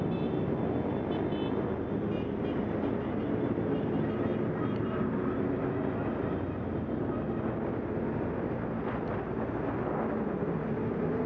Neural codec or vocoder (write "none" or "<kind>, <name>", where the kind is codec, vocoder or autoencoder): none